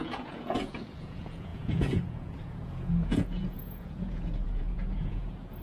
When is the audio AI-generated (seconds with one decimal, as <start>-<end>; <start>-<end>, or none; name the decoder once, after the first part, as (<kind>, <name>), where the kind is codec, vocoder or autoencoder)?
0.0-5.6 (vocoder, Vocos)